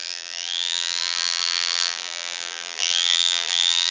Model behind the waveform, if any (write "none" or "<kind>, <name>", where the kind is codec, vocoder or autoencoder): vocoder, BigVGAN v2